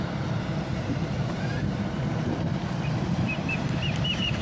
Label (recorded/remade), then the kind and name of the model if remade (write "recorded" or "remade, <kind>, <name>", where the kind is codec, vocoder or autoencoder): remade, vocoder, BigVGAN v2